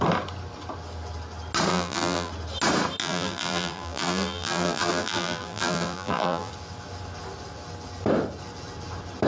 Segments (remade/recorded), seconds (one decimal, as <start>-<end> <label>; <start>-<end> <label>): 0.0-1.7 recorded; 1.7-2.3 remade; 2.3-3.0 recorded; 3.0-6.5 remade; 6.5-9.3 recorded